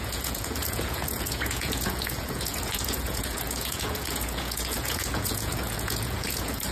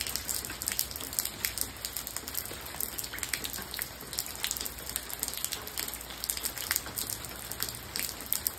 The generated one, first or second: first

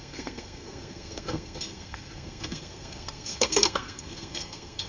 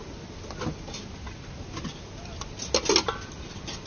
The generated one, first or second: first